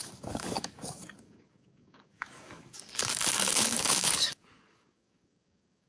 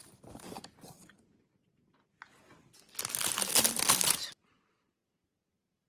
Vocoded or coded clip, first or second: first